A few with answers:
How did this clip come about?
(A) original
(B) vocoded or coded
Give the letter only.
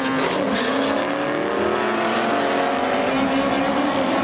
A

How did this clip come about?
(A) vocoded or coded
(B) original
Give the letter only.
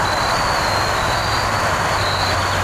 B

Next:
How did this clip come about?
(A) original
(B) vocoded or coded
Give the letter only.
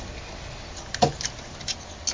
A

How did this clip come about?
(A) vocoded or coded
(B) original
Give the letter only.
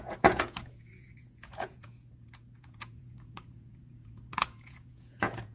A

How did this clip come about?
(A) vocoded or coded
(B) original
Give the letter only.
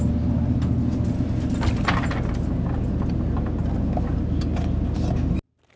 B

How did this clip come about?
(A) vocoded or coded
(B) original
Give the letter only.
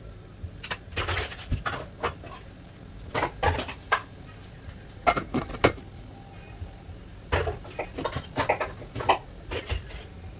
B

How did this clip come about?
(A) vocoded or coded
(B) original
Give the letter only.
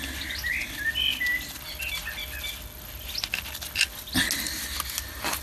B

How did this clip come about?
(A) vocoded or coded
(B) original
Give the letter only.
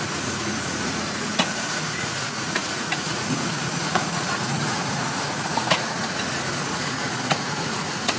A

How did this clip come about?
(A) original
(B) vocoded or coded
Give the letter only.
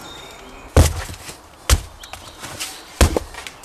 A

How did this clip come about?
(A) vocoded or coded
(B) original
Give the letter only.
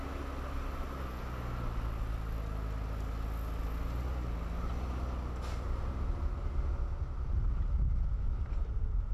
B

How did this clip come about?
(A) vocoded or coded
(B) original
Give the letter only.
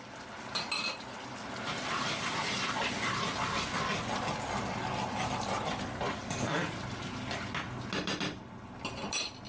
B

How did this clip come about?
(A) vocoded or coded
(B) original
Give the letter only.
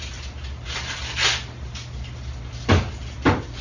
B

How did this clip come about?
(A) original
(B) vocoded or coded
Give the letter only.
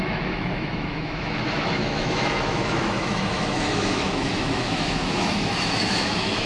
B